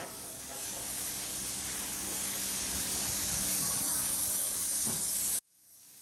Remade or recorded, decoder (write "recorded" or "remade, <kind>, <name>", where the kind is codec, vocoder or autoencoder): remade, codec, DAC